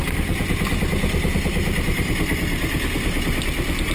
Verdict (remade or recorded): recorded